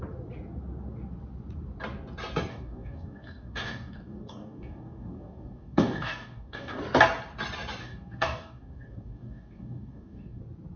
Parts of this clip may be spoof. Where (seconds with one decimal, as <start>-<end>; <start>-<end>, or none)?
2.5-6.8; 7.8-10.4